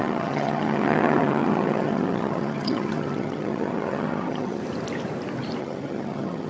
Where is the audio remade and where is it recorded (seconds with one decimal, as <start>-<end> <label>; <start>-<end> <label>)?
0.0-4.6 remade; 4.6-5.6 recorded; 5.6-6.5 remade